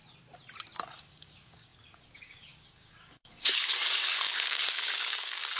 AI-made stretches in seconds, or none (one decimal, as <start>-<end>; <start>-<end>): 1.0-5.6